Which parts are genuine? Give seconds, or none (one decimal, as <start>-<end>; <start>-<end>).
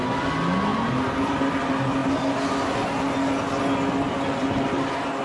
0.0-5.2